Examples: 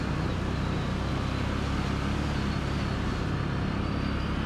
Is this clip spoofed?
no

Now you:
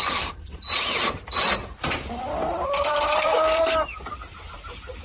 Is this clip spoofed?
yes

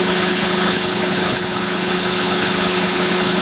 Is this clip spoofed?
yes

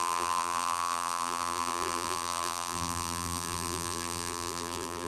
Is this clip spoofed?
yes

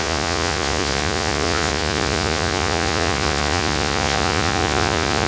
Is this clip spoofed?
yes